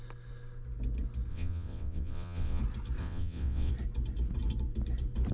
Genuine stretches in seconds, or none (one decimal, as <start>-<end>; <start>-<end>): 0.0-1.3; 2.6-3.0; 3.7-5.3